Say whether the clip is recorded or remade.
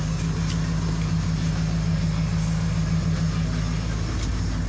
recorded